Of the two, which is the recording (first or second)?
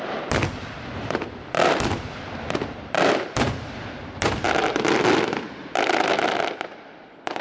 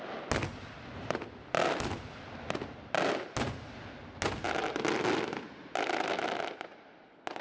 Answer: second